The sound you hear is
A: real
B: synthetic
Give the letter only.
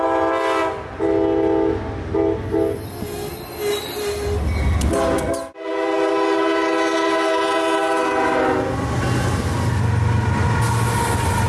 A